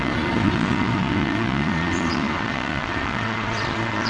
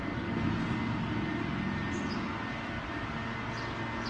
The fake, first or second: first